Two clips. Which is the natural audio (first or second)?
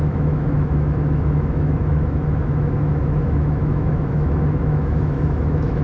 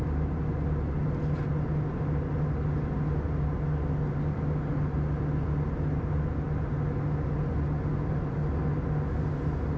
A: second